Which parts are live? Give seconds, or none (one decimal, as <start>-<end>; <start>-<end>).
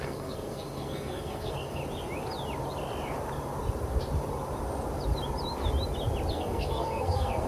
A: 1.8-6.3